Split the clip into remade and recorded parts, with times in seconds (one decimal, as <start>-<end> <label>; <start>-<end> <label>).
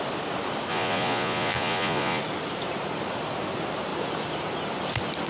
0.0-0.7 recorded; 0.7-2.2 remade; 2.2-5.3 recorded